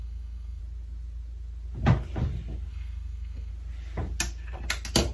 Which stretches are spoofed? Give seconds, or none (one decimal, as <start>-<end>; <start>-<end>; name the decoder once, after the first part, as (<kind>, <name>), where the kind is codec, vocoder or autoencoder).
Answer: 0.0-0.6 (codec, SNAC); 2.7-3.5